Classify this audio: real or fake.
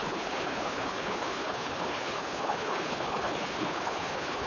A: fake